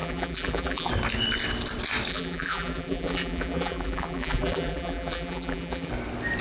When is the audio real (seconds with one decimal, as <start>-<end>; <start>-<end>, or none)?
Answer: 0.9-2.1; 5.9-6.4